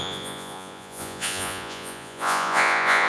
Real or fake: fake